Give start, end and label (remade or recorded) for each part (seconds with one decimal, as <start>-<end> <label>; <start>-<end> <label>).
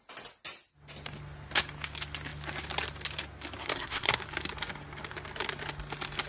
0.0-3.6 recorded; 3.6-4.2 remade; 4.2-6.3 recorded